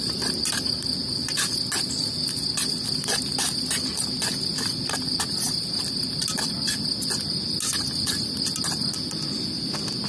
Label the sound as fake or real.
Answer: real